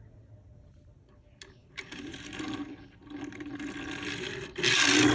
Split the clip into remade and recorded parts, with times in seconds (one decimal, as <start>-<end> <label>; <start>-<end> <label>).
0.0-1.6 recorded; 1.6-2.2 remade; 2.2-5.1 recorded